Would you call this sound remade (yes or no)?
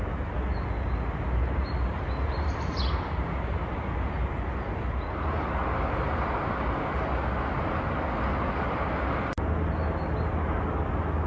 no